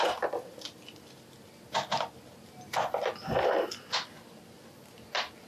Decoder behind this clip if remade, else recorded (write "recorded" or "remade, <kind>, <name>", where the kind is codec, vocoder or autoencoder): recorded